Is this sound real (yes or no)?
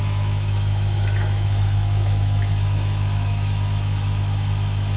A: no